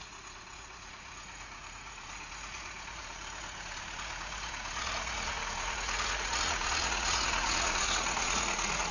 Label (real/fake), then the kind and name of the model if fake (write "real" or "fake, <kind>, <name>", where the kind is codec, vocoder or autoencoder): fake, vocoder, Vocos